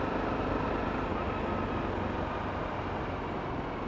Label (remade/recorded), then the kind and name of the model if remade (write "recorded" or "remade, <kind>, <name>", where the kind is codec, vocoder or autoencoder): recorded